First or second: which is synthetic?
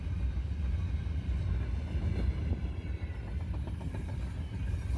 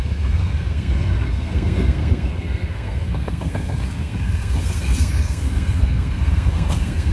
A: second